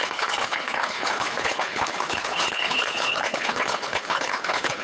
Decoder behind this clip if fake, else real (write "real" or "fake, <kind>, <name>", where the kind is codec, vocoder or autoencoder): fake, codec, HILCodec